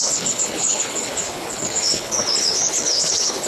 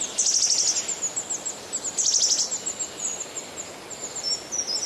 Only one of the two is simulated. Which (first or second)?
first